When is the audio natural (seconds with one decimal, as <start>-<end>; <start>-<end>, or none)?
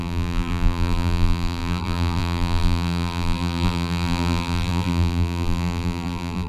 none